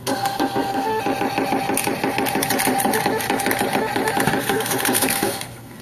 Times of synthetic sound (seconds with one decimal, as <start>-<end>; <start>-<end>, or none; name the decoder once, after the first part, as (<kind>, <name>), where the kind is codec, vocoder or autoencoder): 0.0-0.9 (codec, SNAC); 4.4-5.8